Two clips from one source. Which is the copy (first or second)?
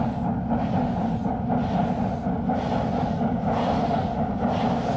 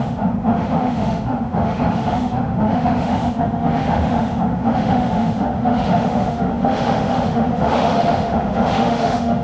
second